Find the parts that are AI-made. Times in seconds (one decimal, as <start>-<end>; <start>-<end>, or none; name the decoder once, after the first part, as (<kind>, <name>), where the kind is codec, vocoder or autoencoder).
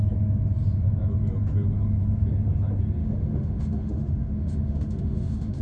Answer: 3.0-5.6 (autoencoder, DAC-VAE)